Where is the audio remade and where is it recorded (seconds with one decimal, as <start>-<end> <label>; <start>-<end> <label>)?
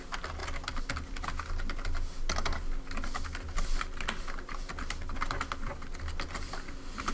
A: 0.0-7.1 recorded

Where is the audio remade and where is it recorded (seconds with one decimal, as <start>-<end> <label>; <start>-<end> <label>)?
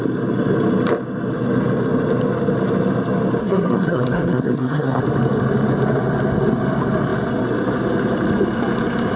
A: 0.0-3.4 recorded; 3.4-5.0 remade; 5.0-9.2 recorded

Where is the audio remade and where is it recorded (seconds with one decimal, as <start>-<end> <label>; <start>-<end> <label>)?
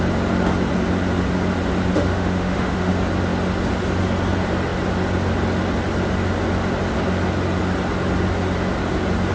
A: 0.0-1.9 recorded; 1.9-2.9 remade; 2.9-9.3 recorded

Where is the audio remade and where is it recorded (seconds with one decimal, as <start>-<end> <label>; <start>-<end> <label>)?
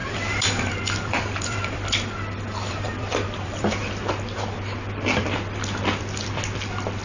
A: 0.0-3.7 remade; 3.7-7.0 recorded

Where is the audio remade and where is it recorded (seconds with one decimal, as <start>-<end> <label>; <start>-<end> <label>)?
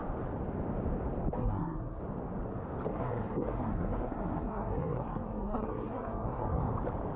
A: 0.0-1.4 recorded; 1.4-2.0 remade; 2.0-2.9 recorded; 2.9-6.6 remade; 6.6-7.2 recorded